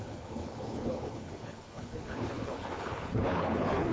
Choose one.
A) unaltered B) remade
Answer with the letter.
B